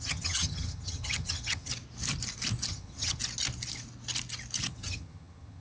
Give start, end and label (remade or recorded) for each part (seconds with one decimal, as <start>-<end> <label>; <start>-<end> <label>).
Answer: 0.0-1.7 remade; 1.7-2.7 recorded; 2.7-3.2 remade; 3.2-4.7 recorded; 4.7-5.6 remade

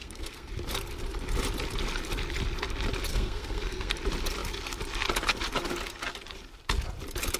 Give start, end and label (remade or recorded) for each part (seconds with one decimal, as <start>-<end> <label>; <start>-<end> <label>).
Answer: 0.0-0.5 remade; 0.5-3.1 recorded; 3.1-3.9 remade; 3.9-7.4 recorded